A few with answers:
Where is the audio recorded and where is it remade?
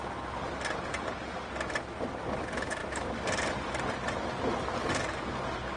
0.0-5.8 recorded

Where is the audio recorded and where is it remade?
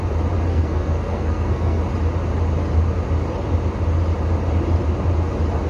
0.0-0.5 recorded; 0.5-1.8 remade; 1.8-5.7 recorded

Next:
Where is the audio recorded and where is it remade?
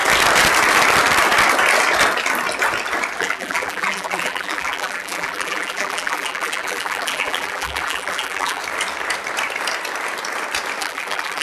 0.0-3.2 recorded; 3.2-8.6 remade; 8.6-10.8 recorded; 10.8-11.4 remade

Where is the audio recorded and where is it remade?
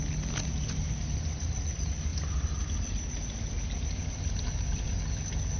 0.0-5.6 recorded